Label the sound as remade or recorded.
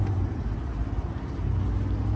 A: recorded